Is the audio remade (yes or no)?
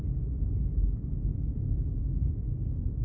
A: no